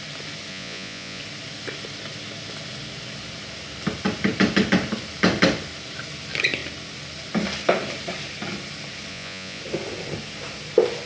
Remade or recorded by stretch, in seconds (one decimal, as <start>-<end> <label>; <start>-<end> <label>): 0.0-0.5 recorded; 0.5-1.2 remade; 1.2-9.1 recorded; 9.1-9.6 remade; 9.6-11.1 recorded